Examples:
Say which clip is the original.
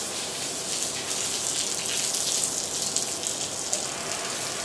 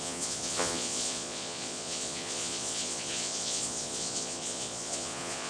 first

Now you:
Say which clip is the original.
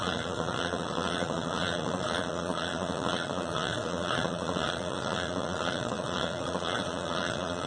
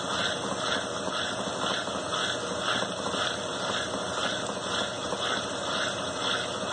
second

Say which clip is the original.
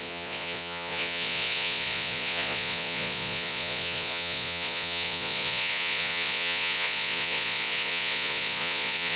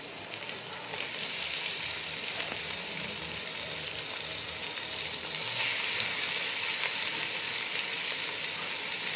second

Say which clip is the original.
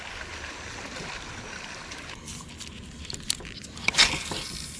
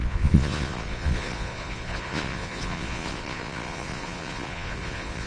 first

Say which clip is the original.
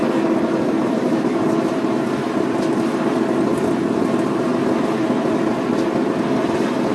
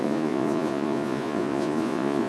first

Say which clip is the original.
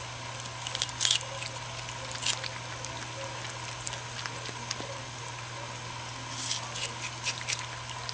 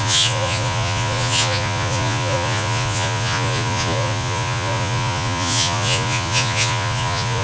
first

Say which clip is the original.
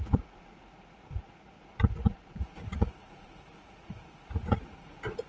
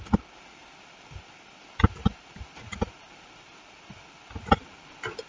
second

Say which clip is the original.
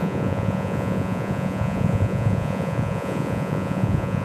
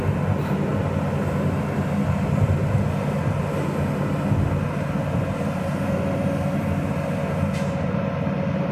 second